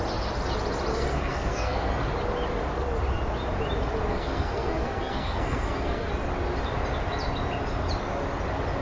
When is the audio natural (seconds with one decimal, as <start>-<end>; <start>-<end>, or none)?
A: 0.0-0.9; 1.9-4.1; 6.1-8.8